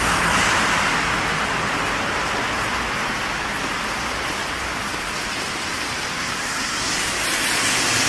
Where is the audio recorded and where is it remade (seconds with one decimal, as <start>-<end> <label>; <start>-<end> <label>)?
0.0-6.1 recorded; 6.1-6.9 remade; 6.9-8.1 recorded